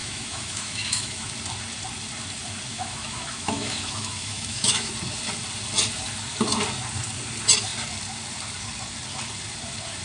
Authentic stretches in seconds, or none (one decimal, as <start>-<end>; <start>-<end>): 1.3-2.7; 4.9-10.0